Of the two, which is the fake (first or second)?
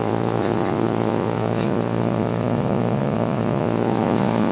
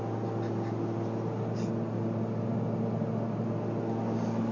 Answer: first